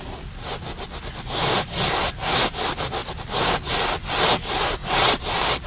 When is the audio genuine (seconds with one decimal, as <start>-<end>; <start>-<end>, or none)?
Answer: 0.0-3.0; 3.7-4.8